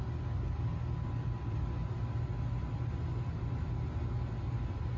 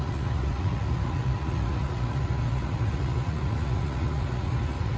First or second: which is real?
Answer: first